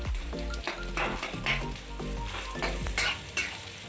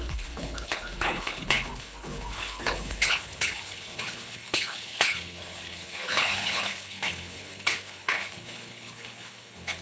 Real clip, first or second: first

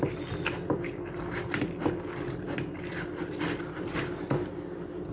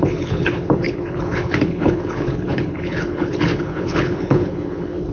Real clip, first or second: first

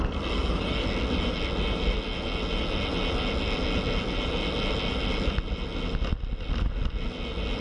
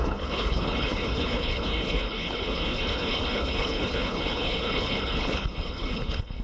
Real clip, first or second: first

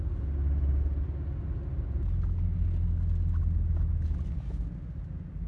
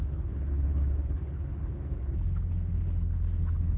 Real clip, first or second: first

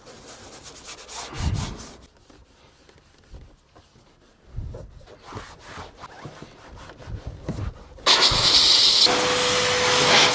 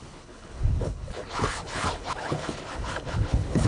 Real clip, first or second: first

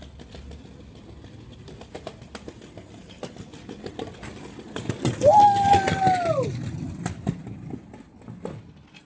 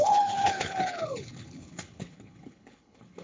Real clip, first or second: first